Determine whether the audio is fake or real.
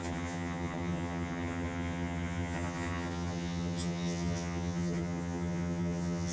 fake